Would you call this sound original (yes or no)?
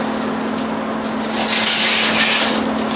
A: yes